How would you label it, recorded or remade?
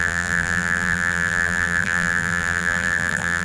remade